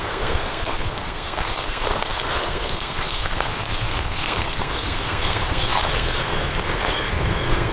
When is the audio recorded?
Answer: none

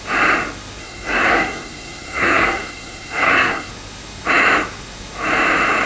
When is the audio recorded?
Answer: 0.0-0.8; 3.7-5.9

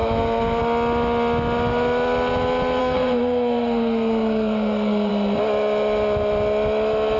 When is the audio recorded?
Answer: 0.6-2.8; 5.1-7.2

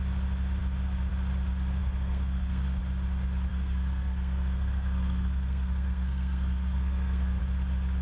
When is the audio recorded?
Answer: 0.0-1.8; 2.8-3.5; 7.4-8.0

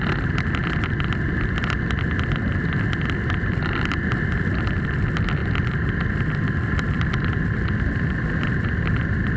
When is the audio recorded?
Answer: 0.0-9.4